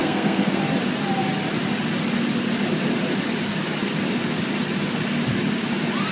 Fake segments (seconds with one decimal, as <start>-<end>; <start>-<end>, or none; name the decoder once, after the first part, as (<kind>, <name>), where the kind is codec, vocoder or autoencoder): 0.0-0.6 (codec, SNAC)